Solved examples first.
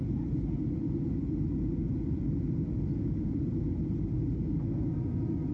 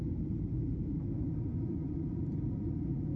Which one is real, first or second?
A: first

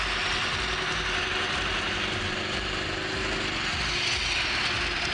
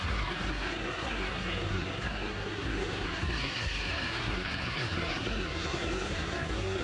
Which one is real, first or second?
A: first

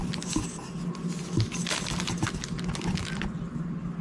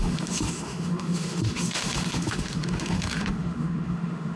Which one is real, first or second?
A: first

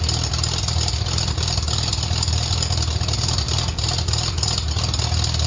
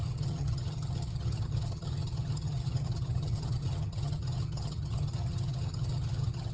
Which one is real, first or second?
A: first